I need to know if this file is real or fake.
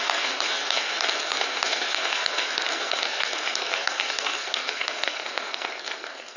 fake